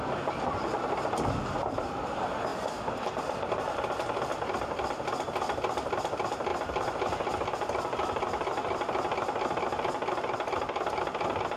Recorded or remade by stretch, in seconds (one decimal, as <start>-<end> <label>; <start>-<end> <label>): 0.0-2.5 recorded; 2.5-3.8 remade; 3.8-4.3 recorded; 4.3-4.9 remade; 4.9-11.6 recorded